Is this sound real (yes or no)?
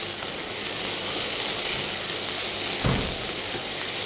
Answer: yes